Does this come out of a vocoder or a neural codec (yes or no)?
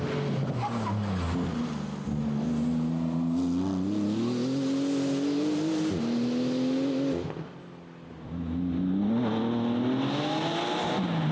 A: no